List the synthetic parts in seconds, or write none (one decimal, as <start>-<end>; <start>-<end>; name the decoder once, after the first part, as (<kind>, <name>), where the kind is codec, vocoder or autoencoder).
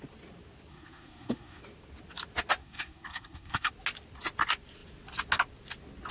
0.7-1.6 (codec, SNAC); 2.6-3.7